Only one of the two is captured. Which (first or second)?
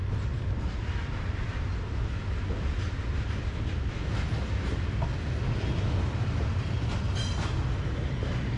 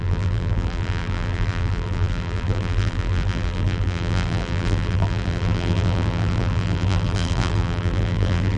first